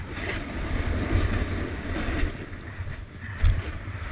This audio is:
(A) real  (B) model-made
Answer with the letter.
A